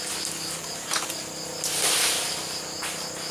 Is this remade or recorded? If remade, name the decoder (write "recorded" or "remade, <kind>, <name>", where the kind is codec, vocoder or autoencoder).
recorded